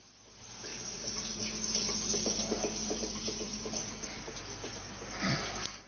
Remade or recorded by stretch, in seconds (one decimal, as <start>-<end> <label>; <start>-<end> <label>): 0.0-0.7 recorded; 0.7-1.4 remade; 1.4-2.8 recorded; 2.8-4.4 remade; 4.4-5.9 recorded